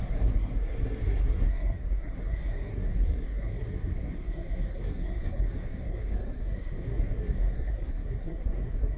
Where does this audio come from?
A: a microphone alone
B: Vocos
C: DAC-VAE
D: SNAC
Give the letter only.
D